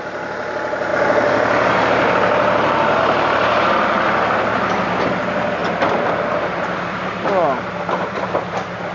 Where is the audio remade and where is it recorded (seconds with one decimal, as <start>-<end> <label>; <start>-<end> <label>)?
0.0-0.9 recorded; 0.9-3.0 remade; 3.0-5.6 recorded; 5.6-8.9 remade